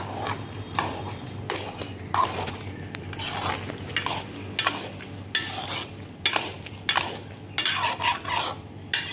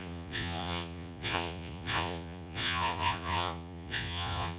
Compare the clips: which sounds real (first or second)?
first